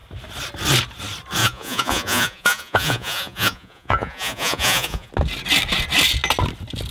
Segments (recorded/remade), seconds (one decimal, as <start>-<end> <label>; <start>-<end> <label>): 0.0-1.4 recorded; 1.4-5.1 remade; 5.1-6.9 recorded